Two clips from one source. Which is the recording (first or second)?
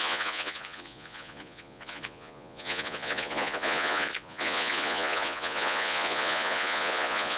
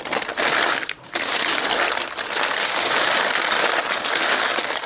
second